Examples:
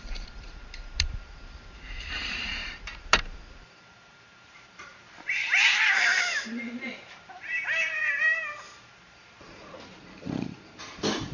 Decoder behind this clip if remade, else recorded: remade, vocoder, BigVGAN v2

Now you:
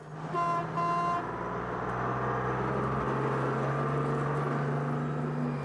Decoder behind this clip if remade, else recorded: recorded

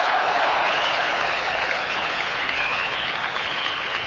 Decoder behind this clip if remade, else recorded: remade, codec, HILCodec